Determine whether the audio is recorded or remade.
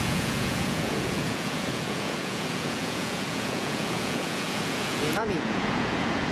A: remade